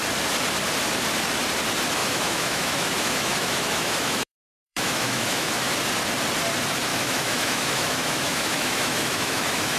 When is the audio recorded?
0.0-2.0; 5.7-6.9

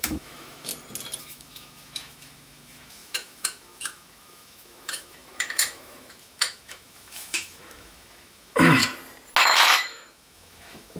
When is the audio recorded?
0.7-1.2; 8.8-9.4

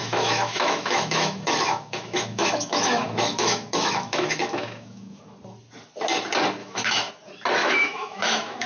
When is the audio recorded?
5.2-6.6; 7.1-7.6

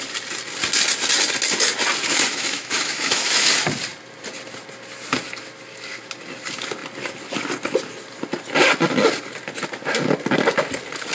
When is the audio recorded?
0.0-2.3; 3.5-11.1